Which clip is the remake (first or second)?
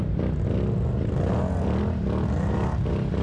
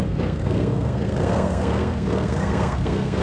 second